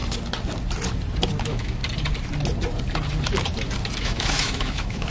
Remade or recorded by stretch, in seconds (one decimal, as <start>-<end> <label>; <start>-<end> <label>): 0.0-1.4 recorded; 1.4-1.8 remade; 1.8-4.0 recorded; 4.0-5.1 remade